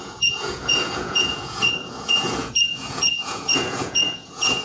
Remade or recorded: remade